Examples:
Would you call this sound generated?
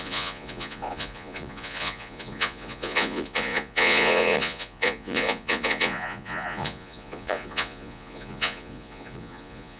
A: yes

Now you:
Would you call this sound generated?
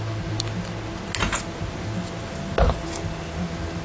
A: no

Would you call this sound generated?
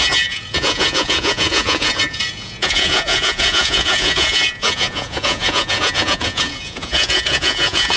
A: yes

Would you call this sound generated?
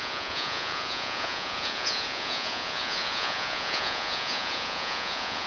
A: yes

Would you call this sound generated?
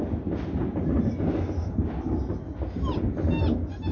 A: no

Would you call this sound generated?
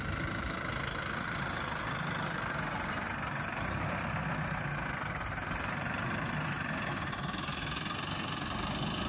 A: no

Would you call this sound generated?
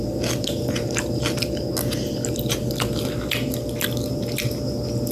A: no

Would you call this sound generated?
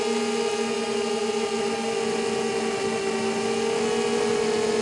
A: no